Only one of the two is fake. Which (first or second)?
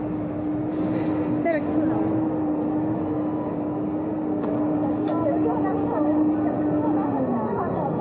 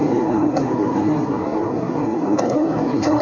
second